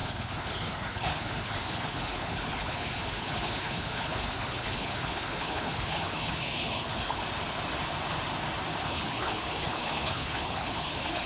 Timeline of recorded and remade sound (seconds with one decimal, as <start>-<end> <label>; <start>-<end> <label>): 0.0-7.2 remade; 7.2-8.8 recorded; 8.8-11.3 remade